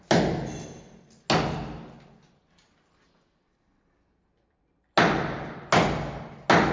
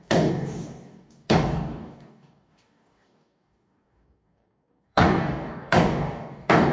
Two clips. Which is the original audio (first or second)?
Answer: first